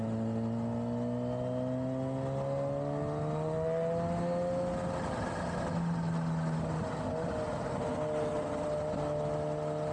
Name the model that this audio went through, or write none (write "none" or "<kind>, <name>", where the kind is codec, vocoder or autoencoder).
none